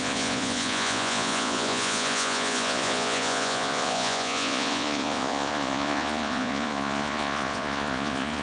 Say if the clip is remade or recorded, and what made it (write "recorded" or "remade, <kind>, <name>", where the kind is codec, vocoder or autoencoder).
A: remade, vocoder, Vocos